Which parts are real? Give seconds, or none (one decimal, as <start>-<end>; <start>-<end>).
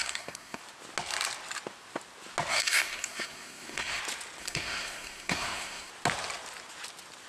0.6-2.5; 4.0-4.4; 5.9-7.3